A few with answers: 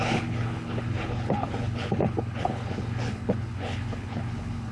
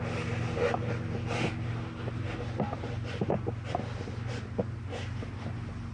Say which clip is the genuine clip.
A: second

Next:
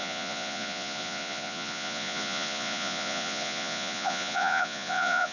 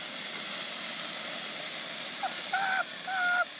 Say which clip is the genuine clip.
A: second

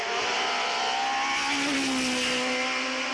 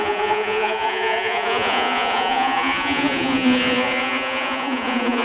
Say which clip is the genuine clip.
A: first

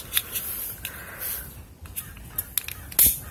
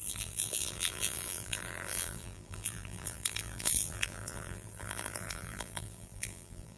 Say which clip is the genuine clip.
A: first